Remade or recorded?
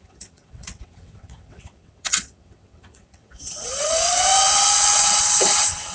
remade